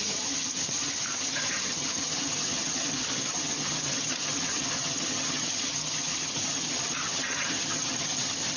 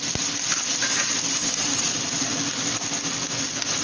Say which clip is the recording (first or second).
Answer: second